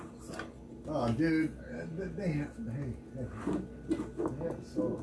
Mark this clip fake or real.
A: real